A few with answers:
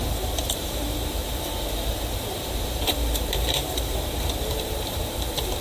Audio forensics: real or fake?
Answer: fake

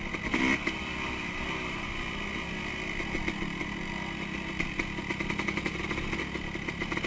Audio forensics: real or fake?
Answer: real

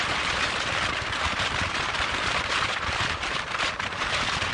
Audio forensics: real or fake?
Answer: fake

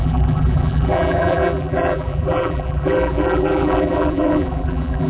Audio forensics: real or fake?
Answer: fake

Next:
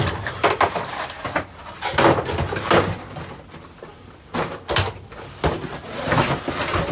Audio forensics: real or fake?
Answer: real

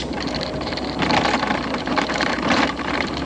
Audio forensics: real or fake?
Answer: fake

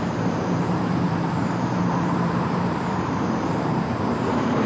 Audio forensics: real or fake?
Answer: fake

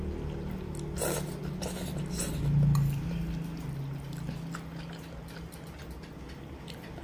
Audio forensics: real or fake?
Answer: real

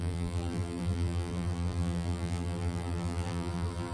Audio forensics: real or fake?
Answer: fake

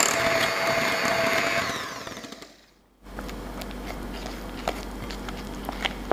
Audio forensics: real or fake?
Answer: real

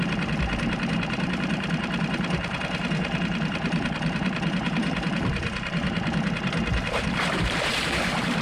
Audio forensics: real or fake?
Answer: fake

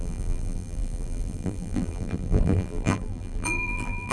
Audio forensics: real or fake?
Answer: fake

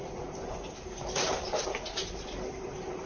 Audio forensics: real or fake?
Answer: real